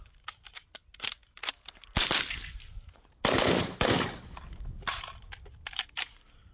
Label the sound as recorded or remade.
recorded